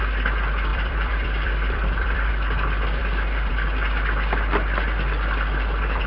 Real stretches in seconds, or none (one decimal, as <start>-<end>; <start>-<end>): 0.0-0.7; 2.3-6.1